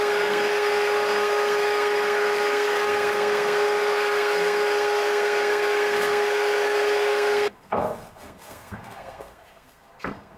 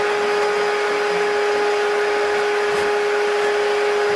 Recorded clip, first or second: second